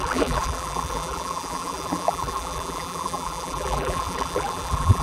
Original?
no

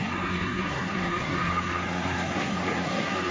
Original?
no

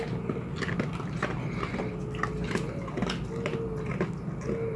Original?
yes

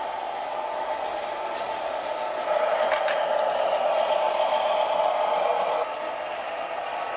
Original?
yes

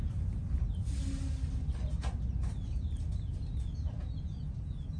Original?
yes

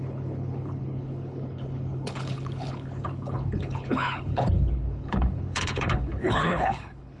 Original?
no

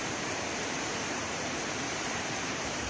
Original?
no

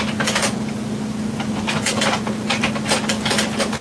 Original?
yes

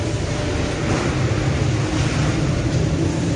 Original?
yes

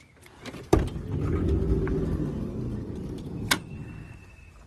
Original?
yes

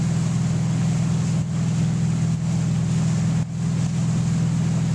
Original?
yes